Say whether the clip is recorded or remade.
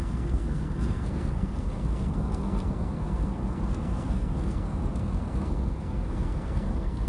remade